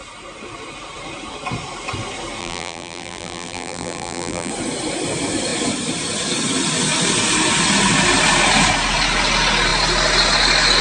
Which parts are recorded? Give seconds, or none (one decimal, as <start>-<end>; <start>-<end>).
0.0-2.4; 4.5-10.8